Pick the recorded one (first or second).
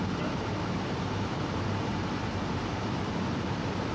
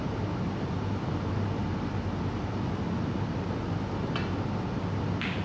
second